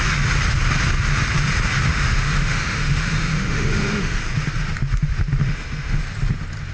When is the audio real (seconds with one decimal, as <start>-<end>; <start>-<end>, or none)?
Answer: 0.0-1.9; 4.2-5.4; 6.0-6.7